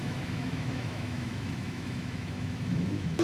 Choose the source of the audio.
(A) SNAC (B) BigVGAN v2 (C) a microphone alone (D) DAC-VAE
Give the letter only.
D